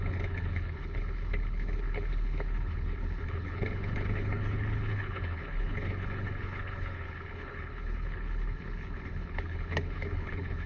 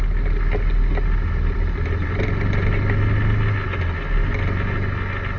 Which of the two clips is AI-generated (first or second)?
first